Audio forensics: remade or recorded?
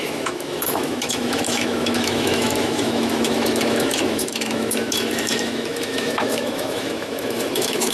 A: remade